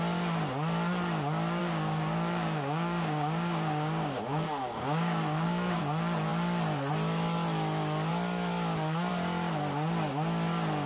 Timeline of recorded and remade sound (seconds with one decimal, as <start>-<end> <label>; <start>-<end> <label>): 0.0-1.6 recorded; 1.6-5.8 remade; 5.8-10.9 recorded